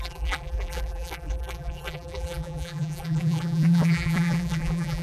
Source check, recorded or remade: remade